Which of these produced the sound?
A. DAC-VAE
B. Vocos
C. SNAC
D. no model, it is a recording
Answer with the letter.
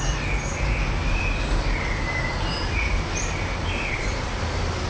D